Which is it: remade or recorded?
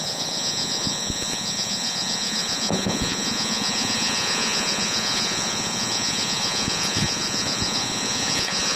remade